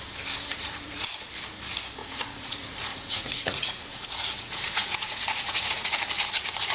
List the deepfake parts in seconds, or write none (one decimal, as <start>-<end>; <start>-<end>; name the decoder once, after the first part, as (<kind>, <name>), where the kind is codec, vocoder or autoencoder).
0.5-1.1 (vocoder, Vocos); 2.0-6.0